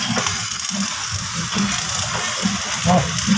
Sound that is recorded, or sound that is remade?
recorded